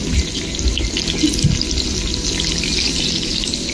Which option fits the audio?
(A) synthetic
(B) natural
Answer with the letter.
B